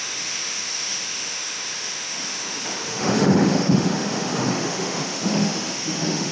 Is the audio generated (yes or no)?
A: yes